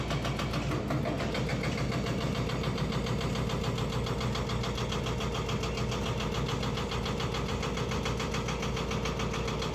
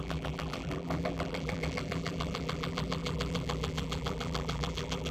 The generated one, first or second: second